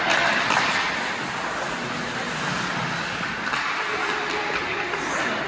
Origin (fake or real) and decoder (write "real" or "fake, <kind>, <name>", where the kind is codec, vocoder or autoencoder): real